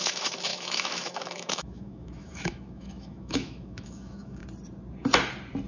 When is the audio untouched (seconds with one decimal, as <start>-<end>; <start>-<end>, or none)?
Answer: 4.4-5.7